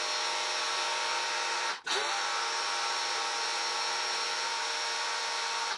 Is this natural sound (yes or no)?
yes